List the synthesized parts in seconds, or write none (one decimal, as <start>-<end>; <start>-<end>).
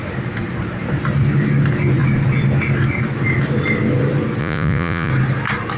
4.4-5.1